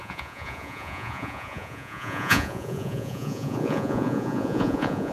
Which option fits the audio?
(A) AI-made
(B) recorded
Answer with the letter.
A